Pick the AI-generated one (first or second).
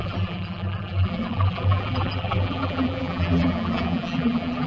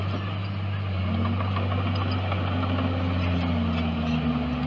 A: first